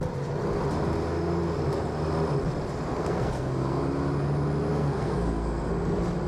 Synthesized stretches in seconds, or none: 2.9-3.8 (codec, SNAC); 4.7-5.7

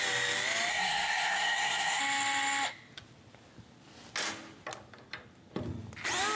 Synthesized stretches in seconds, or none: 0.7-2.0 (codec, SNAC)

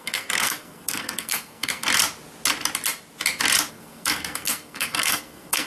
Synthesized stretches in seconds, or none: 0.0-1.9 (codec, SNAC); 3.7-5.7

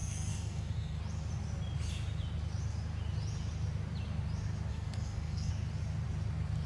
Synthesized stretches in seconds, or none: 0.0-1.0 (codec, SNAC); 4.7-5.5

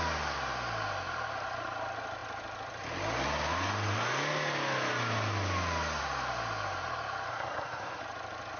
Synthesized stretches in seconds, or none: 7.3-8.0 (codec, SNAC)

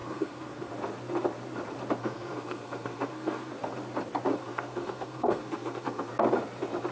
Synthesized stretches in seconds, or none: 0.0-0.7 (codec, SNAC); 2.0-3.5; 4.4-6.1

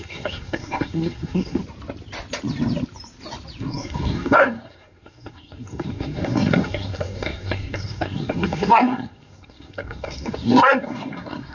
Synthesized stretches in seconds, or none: 0.0-1.6 (codec, SNAC); 3.6-11.5

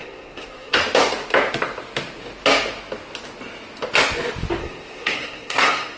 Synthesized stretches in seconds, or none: 0.0-0.8 (codec, SNAC); 4.6-6.0